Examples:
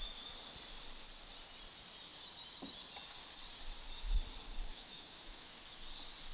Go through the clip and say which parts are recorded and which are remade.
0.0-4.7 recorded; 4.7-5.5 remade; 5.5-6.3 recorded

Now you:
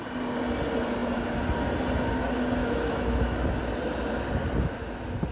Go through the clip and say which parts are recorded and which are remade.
0.0-2.6 recorded; 2.6-3.6 remade; 3.6-5.3 recorded

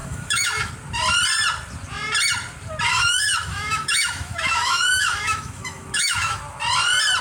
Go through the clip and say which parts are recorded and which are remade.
0.0-0.7 remade; 0.7-2.9 recorded; 2.9-6.4 remade; 6.4-7.2 recorded

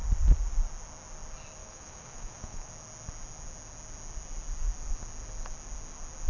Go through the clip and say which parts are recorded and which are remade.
0.0-1.6 recorded; 1.6-2.7 remade; 2.7-6.3 recorded

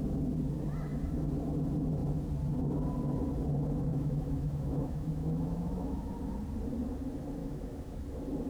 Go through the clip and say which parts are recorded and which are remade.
0.0-3.9 recorded; 3.9-6.1 remade; 6.1-7.4 recorded; 7.4-8.0 remade; 8.0-8.5 recorded

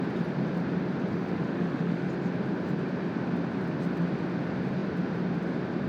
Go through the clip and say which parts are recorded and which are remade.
0.0-1.1 recorded; 1.1-2.1 remade; 2.1-5.9 recorded

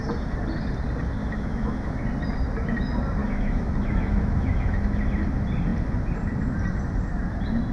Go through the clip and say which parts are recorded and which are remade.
0.0-1.2 recorded; 1.2-2.0 remade; 2.0-3.2 recorded; 3.2-5.0 remade; 5.0-7.7 recorded

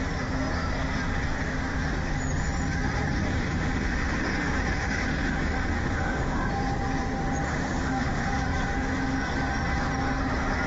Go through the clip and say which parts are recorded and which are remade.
0.0-3.3 recorded; 3.3-6.5 remade; 6.5-7.5 recorded; 7.5-8.3 remade; 8.3-10.7 recorded